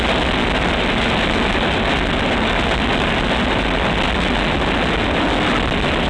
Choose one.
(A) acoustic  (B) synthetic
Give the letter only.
A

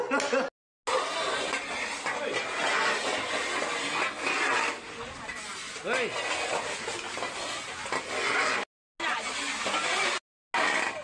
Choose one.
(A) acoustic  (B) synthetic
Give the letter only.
A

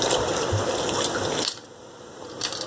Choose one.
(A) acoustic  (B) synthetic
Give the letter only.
A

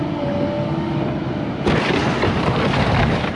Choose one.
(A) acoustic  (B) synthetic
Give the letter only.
A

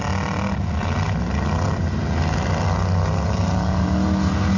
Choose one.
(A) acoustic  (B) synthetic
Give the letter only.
A